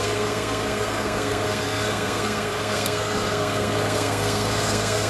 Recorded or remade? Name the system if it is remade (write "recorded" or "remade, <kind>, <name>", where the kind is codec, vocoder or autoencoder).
remade, codec, SNAC